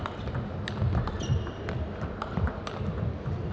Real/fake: real